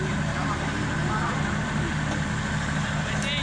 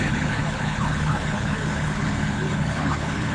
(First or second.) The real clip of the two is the first